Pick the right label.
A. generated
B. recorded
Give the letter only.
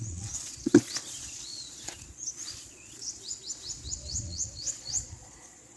A